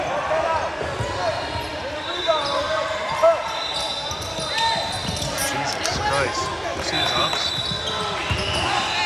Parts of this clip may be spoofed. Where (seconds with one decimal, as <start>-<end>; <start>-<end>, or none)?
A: 1.3-3.9